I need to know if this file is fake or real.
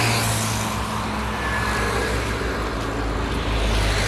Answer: real